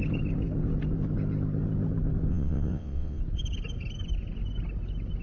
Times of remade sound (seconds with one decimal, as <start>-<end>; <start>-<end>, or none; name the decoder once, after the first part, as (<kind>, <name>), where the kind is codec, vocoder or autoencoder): 2.3-3.2 (vocoder, WaveNeXt)